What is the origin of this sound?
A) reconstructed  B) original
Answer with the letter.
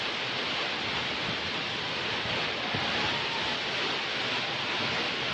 B